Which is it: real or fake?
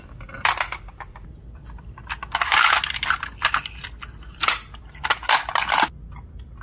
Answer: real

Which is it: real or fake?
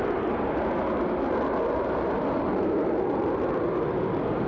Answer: real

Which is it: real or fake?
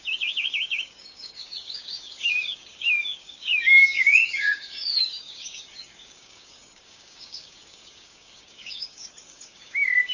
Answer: fake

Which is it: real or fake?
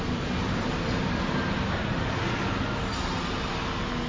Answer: real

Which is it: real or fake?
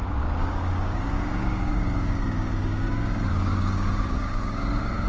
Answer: fake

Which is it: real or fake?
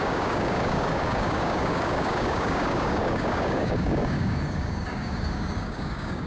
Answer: fake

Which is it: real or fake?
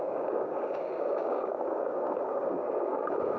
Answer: fake